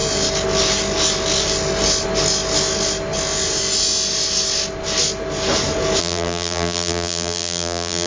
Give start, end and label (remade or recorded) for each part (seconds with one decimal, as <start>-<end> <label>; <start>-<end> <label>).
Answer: 0.0-6.0 recorded; 6.0-8.1 remade